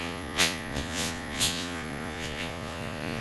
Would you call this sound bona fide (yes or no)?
no